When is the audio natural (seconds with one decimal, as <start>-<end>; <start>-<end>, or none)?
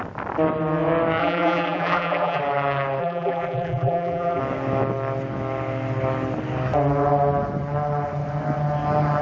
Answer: 0.0-1.2; 2.4-3.0; 4.4-9.2